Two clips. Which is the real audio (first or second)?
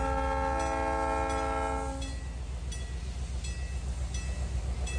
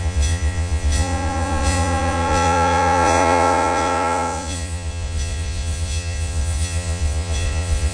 first